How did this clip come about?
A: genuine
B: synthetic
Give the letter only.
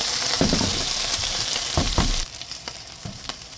B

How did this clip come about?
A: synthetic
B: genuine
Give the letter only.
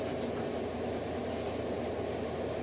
B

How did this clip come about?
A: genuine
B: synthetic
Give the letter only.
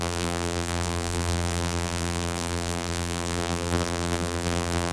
B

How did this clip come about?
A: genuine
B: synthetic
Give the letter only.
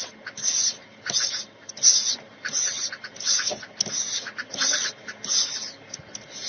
A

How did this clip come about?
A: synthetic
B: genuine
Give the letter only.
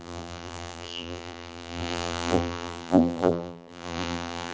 A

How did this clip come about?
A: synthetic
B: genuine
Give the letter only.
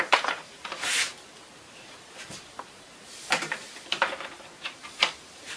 A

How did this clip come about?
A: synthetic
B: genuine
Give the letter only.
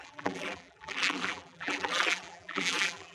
A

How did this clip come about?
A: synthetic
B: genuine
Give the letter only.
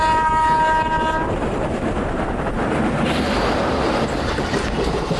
A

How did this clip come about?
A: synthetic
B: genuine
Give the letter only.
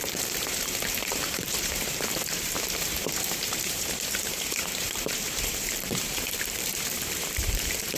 A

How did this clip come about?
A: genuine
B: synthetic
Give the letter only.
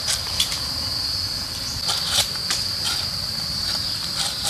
B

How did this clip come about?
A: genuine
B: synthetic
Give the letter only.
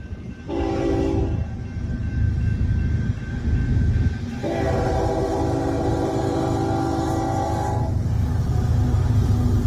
B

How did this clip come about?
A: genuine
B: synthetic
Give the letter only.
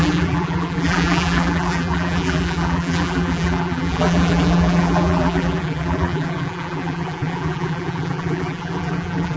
B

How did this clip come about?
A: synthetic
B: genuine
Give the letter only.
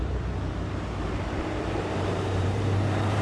A